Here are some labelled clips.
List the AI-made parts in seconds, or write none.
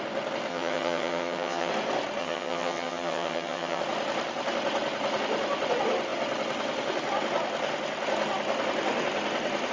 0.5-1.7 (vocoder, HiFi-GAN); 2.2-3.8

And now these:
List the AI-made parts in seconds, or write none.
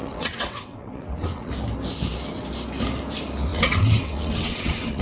0.0-1.5 (vocoder, WaveNeXt); 3.5-5.0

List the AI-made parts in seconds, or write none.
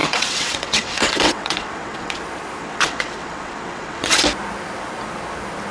0.0-2.2 (vocoder, WaveNeXt); 2.6-4.2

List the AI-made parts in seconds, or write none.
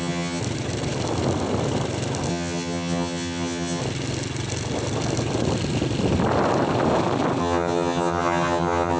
0.0-0.4 (vocoder, HiFi-GAN); 2.3-3.8; 7.4-9.0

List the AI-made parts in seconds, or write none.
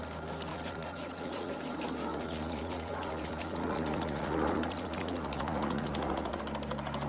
0.5-1.5 (vocoder, Vocos); 2.1-6.4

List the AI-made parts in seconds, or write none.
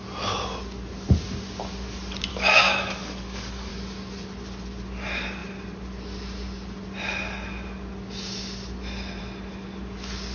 2.3-3.7 (codec, DAC)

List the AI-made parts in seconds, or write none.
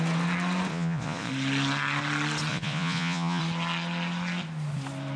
0.7-1.3 (vocoder, Vocos); 2.5-3.4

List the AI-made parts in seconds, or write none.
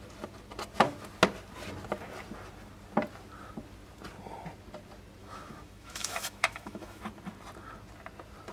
5.2-7.0 (autoencoder, DAC-VAE)